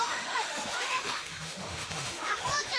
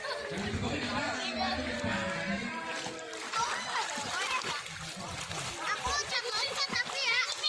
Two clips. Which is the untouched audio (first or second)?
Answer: second